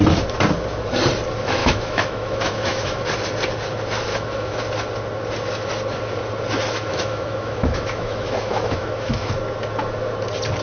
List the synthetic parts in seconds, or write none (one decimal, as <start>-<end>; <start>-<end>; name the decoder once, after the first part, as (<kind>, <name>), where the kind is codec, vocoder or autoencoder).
1.6-3.0 (autoencoder, DAC-VAE); 4.1-4.6; 6.9-9.3